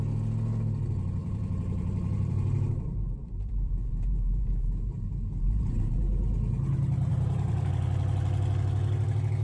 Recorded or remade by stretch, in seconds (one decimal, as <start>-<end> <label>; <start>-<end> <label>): 0.0-1.2 recorded; 1.2-6.0 remade; 6.0-7.1 recorded; 7.1-7.7 remade; 7.7-9.4 recorded